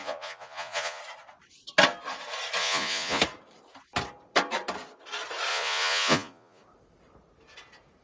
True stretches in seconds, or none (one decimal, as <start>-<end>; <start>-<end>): 1.0-2.6; 3.2-5.5; 6.6-8.0